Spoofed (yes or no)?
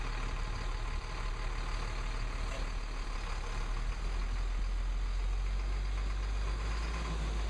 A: no